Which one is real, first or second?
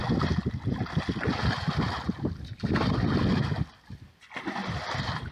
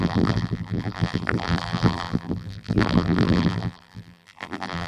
first